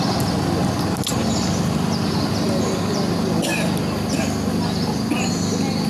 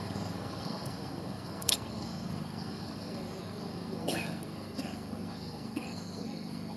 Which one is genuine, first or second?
first